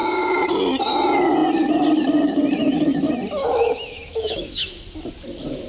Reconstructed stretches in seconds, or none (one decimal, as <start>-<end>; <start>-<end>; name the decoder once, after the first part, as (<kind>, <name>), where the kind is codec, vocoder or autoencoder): 2.6-3.1 (autoencoder, DAC-VAE); 3.5-4.8